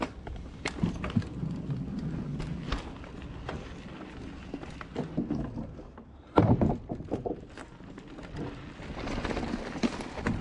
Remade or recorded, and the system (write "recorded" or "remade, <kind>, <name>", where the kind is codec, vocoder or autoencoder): recorded